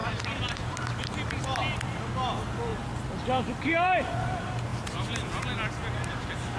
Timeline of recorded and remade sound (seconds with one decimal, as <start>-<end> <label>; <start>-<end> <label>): 0.0-2.0 remade; 2.0-2.7 recorded; 2.7-4.3 remade; 4.3-4.7 recorded; 4.7-5.4 remade; 5.4-6.6 recorded